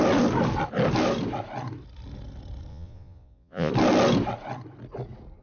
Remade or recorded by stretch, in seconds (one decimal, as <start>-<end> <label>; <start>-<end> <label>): 0.0-2.7 recorded; 2.7-3.7 remade; 3.7-5.4 recorded